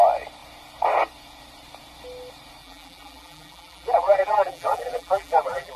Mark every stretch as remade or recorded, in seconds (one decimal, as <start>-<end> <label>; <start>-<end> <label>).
0.0-2.6 recorded; 2.6-5.8 remade